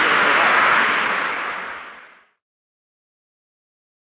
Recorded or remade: recorded